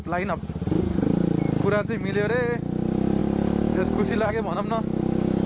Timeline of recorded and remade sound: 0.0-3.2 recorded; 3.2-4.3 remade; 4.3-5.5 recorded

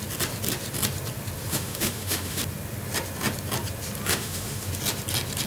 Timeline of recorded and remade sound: 0.0-1.5 recorded; 1.5-2.4 remade; 2.4-4.1 recorded; 4.1-4.7 remade; 4.7-5.5 recorded

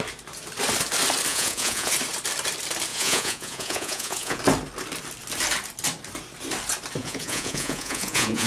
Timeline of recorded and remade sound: 0.0-1.3 recorded; 1.3-1.9 remade; 1.9-2.9 recorded; 2.9-4.4 remade; 4.4-7.0 recorded; 7.0-8.5 remade

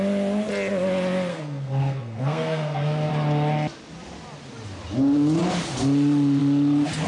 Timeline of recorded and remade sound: 0.0-1.3 recorded; 1.3-3.1 remade; 3.1-7.1 recorded

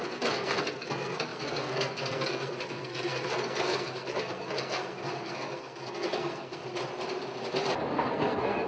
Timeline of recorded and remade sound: 0.0-6.6 remade; 6.6-7.9 recorded; 7.9-8.7 remade